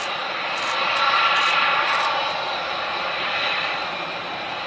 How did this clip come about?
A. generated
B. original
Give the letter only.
B